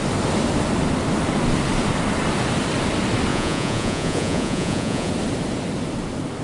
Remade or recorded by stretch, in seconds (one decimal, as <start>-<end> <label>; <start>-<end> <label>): 0.0-3.3 recorded; 3.3-5.1 remade; 5.1-6.4 recorded